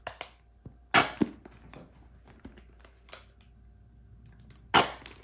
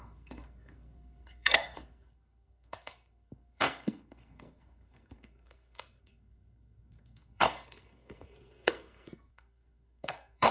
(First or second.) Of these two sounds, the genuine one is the first